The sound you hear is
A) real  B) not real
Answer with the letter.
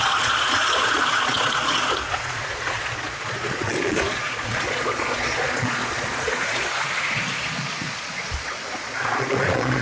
B